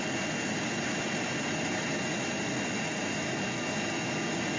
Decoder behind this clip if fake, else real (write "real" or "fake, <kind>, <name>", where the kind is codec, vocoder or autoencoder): real